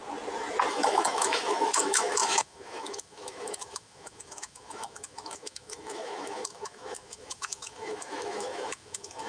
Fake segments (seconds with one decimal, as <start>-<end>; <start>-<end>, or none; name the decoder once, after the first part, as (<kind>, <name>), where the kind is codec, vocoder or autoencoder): 0.7-9.3 (autoencoder, DAC-VAE)